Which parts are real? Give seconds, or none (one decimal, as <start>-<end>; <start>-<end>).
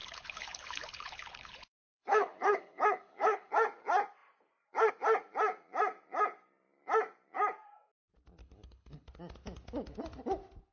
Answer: 3.5-8.4; 9.1-10.7